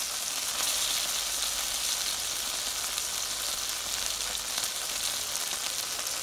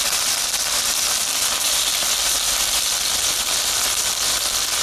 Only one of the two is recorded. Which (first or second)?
first